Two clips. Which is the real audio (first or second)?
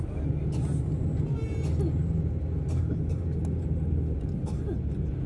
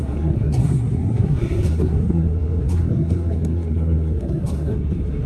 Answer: first